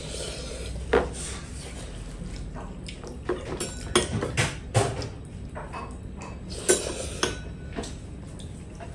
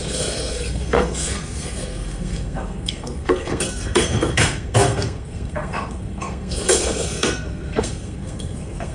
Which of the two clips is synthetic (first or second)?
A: second